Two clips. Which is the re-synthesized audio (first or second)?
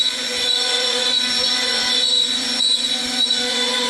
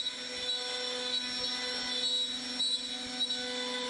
first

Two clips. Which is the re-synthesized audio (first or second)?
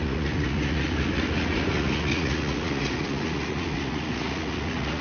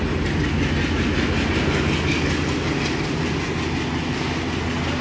first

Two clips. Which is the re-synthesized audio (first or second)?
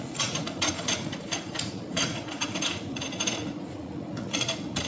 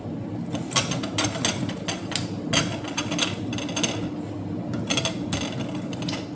first